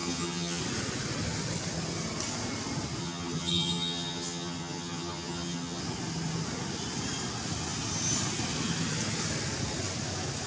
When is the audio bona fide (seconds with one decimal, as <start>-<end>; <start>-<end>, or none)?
0.6-3.0; 5.8-10.5